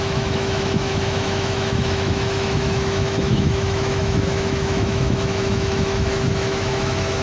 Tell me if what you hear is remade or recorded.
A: remade